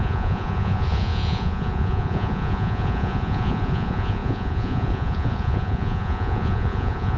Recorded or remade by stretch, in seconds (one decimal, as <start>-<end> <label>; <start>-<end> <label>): 0.0-7.2 remade